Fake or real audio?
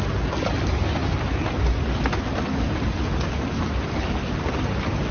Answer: real